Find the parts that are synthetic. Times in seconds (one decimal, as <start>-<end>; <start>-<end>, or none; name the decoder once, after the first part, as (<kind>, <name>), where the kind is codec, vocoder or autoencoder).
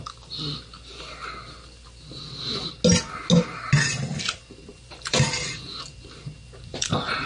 4.7-5.5 (vocoder, BigVGAN v2); 6.7-7.3